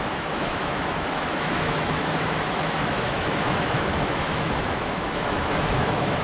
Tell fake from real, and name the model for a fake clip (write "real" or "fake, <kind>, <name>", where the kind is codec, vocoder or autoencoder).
fake, autoencoder, DAC-VAE